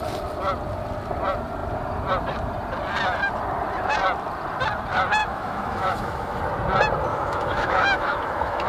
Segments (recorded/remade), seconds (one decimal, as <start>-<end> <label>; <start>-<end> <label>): 0.0-5.2 recorded; 5.2-6.4 remade; 6.4-7.1 recorded; 7.1-8.7 remade

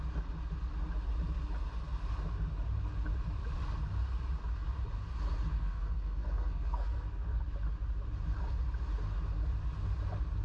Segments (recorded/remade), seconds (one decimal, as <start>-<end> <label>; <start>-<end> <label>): 0.0-5.5 recorded; 5.5-7.4 remade; 7.4-10.4 recorded

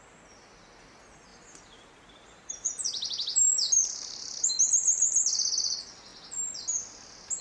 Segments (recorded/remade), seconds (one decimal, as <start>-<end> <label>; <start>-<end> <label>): 0.0-1.3 recorded; 1.3-4.5 remade; 4.5-7.4 recorded

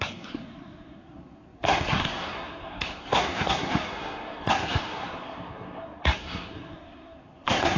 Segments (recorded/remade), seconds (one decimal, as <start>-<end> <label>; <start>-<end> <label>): 0.0-7.8 remade